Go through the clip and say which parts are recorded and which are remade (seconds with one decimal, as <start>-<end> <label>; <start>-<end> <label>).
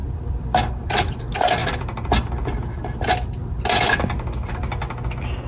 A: 0.0-1.2 remade; 1.2-1.6 recorded; 1.6-2.3 remade; 2.3-5.5 recorded